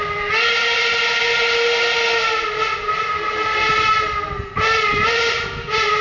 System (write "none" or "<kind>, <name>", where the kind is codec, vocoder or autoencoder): none